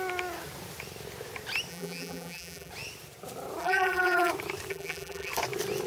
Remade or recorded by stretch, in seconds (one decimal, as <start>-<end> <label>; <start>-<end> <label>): 0.0-1.7 recorded; 1.7-2.7 remade; 2.7-3.6 recorded; 3.6-4.3 remade; 4.3-4.7 recorded; 4.7-5.3 remade; 5.3-5.9 recorded

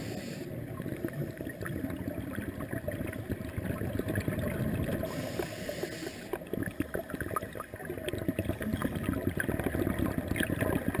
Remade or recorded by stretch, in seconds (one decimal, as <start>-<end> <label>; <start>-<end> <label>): 0.0-11.0 recorded

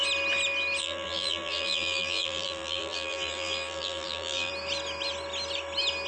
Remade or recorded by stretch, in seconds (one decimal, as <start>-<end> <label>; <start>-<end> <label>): 0.0-0.8 recorded; 0.8-4.5 remade; 4.5-6.1 recorded

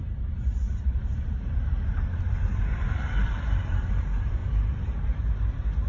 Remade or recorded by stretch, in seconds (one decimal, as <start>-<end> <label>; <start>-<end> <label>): 0.0-5.9 remade

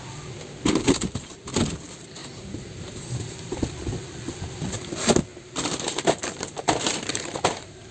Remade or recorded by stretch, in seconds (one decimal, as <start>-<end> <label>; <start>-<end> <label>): 0.0-2.2 recorded; 2.2-3.6 remade; 3.6-5.3 recorded; 5.3-7.9 remade

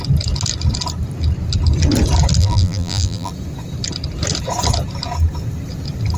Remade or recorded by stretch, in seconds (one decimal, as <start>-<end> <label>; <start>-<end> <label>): 0.0-2.4 recorded; 2.4-3.3 remade; 3.3-6.2 recorded

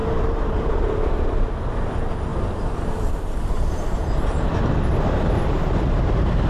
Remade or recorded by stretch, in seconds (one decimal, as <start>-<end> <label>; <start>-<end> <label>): 0.0-0.7 remade; 0.7-2.3 recorded; 2.3-6.5 remade

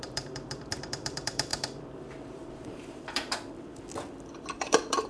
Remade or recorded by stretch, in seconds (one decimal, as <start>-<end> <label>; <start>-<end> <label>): 0.0-5.1 remade